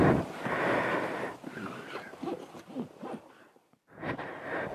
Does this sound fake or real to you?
real